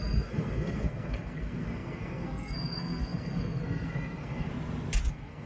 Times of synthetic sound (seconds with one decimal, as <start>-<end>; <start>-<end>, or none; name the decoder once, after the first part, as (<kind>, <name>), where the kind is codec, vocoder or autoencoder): 0.0-4.5 (codec, SNAC); 5.1-5.5